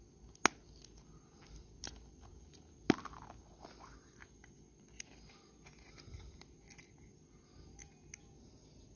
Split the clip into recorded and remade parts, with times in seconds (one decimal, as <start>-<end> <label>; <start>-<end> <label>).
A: 0.0-9.0 recorded